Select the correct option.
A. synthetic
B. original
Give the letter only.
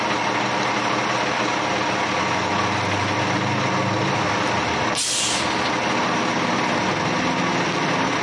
B